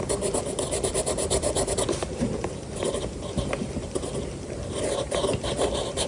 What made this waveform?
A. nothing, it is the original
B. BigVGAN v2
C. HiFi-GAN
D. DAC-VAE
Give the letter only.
A